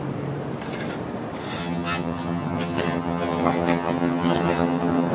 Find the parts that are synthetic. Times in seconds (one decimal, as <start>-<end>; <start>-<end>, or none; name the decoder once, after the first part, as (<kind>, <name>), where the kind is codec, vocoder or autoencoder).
1.6-5.1 (vocoder, HiFi-GAN)